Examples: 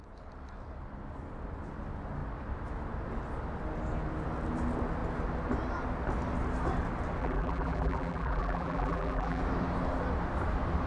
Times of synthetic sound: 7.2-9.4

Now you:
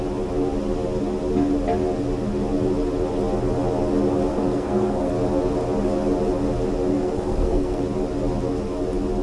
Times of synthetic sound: 4.3-5.1; 6.9-7.8